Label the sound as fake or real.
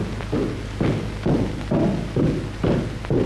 real